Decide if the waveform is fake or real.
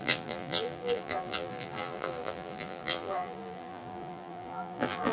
fake